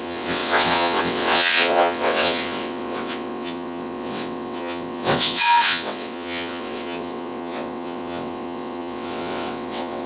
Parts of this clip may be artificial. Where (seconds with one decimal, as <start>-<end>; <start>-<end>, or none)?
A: 0.0-10.1